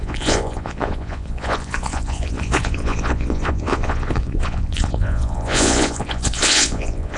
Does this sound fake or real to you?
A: fake